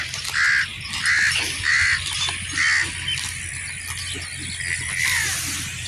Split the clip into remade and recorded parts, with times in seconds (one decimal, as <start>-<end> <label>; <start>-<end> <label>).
0.0-0.7 recorded; 0.7-1.2 remade; 1.2-5.9 recorded